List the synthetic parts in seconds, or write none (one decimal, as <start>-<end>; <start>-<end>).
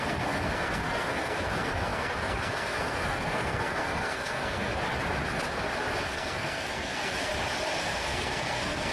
0.0-4.7; 6.0-7.3; 7.8-8.9